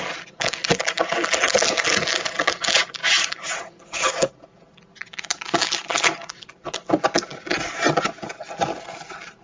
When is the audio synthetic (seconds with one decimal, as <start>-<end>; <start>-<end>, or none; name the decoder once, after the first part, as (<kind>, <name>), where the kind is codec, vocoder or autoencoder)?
3.0-3.6 (vocoder, BigVGAN v2); 5.6-6.6